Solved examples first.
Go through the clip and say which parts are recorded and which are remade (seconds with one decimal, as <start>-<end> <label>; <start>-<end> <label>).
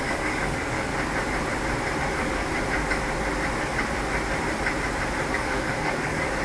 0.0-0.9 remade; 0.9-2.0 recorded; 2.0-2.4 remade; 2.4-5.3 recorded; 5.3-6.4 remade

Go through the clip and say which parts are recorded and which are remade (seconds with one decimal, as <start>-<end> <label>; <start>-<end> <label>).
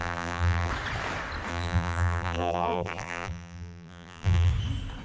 0.0-0.7 remade; 0.7-1.5 recorded; 1.5-4.5 remade; 4.5-5.0 recorded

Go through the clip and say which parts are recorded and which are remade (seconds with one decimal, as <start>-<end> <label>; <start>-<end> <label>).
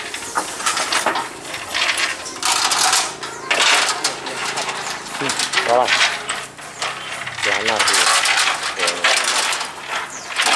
0.0-4.4 recorded; 4.4-5.2 remade; 5.2-10.6 recorded